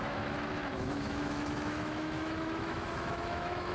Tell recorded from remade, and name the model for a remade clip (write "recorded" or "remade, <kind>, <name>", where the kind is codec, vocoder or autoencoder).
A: remade, autoencoder, DAC-VAE